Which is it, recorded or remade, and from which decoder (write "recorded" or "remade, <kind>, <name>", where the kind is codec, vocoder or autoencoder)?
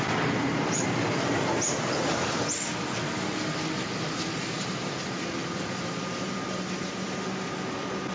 recorded